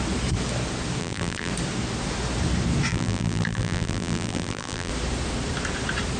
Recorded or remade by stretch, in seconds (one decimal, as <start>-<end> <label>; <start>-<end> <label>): 0.0-1.0 recorded; 1.0-1.5 remade; 1.5-2.9 recorded; 2.9-4.9 remade; 4.9-6.2 recorded